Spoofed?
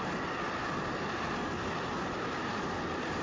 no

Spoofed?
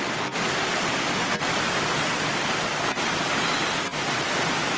no